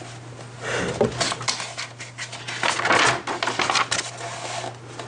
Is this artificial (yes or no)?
no